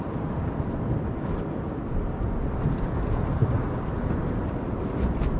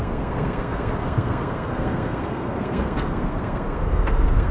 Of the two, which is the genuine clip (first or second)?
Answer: first